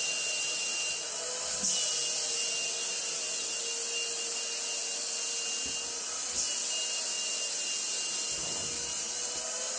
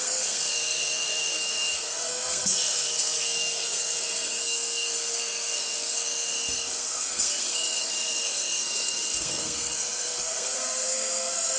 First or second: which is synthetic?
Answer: second